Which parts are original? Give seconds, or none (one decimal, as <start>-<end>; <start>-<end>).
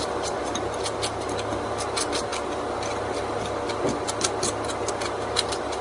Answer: 2.3-4.9